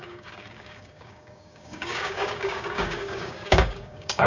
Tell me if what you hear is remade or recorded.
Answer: remade